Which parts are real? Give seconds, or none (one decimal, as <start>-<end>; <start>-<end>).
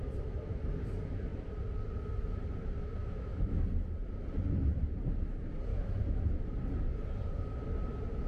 0.0-3.0; 3.6-5.7; 6.4-8.3